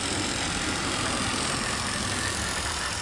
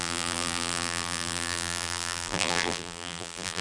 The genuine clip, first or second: first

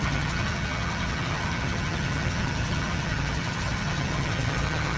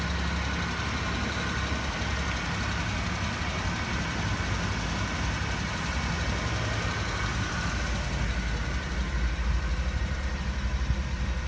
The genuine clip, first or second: second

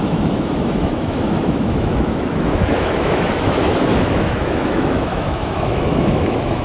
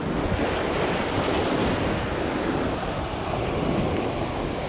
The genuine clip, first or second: second